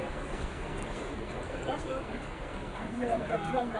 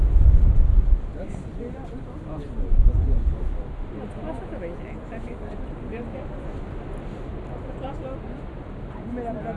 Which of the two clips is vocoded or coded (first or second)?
first